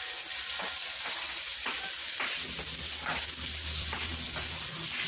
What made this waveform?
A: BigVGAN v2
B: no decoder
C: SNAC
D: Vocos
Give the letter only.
B